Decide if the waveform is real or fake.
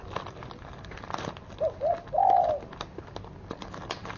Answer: real